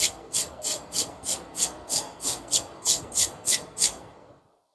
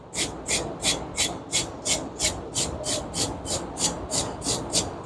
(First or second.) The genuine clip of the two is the second